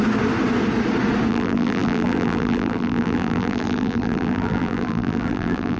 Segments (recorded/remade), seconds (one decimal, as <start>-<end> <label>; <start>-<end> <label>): 0.0-1.3 recorded; 1.3-5.8 remade